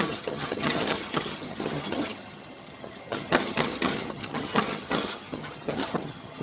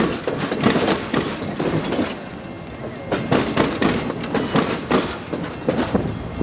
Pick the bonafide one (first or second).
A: second